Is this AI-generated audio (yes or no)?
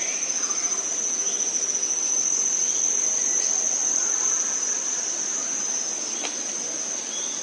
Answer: no